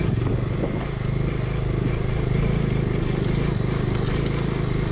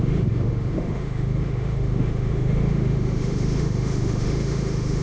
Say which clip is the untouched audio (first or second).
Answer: first